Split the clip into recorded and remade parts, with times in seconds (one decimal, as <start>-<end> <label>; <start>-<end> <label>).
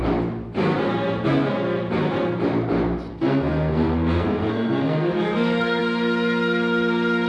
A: 0.0-3.1 recorded; 3.1-5.8 remade; 5.8-7.3 recorded